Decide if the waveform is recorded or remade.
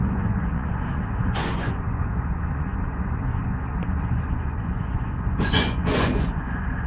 remade